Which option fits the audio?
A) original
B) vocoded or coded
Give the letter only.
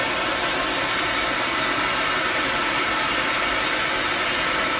A